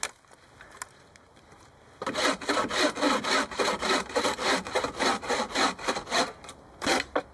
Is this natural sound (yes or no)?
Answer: yes